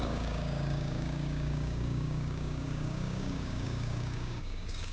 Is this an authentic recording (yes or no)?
no